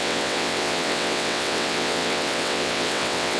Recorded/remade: remade